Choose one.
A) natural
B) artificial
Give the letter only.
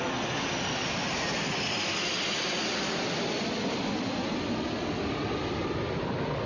A